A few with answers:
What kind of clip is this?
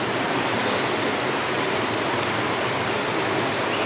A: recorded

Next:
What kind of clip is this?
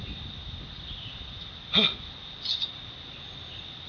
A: recorded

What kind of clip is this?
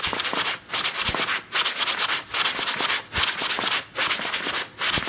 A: recorded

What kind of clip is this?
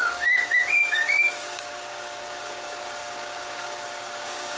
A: remade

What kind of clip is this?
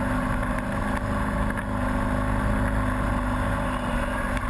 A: recorded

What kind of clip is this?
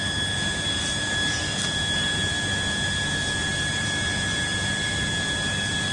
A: recorded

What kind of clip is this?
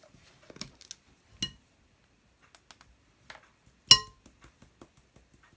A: recorded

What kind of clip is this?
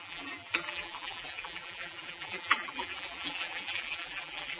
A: remade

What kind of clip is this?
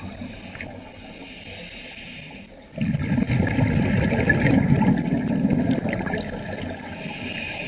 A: recorded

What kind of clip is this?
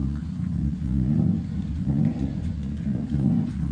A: remade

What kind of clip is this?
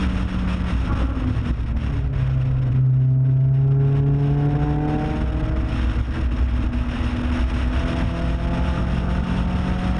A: recorded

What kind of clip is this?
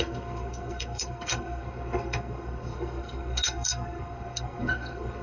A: remade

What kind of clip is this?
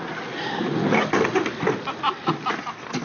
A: recorded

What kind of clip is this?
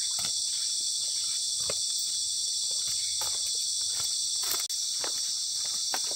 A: recorded